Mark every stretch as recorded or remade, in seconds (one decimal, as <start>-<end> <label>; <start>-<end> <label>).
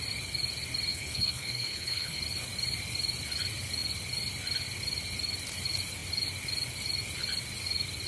0.0-0.9 recorded; 0.9-2.2 remade; 2.2-8.1 recorded